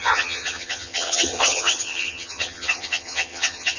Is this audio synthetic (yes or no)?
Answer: yes